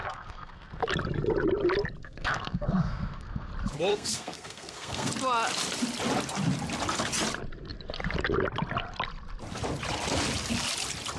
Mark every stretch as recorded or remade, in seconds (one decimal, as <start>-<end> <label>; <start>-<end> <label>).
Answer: 0.0-0.8 remade; 0.8-2.0 recorded; 2.0-3.5 remade; 3.5-3.9 recorded; 3.9-5.1 remade; 5.1-11.2 recorded